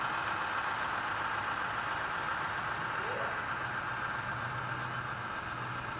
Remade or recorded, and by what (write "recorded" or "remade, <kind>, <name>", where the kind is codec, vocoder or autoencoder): recorded